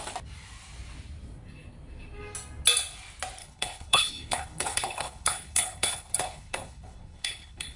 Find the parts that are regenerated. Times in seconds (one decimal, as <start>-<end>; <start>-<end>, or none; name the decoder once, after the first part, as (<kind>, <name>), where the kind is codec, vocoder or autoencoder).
3.4-7.8 (codec, HILCodec)